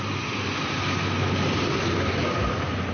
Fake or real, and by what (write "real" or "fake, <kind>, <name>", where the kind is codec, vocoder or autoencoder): real